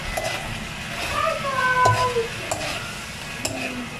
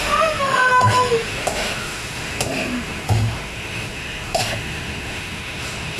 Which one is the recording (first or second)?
first